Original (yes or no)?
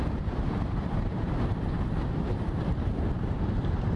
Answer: no